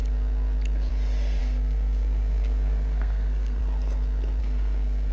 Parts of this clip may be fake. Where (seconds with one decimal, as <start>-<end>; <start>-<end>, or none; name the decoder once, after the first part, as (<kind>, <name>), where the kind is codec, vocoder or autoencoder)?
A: 1.4-3.6 (codec, SNAC); 4.4-5.1